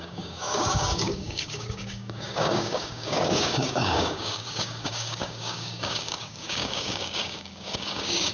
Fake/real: fake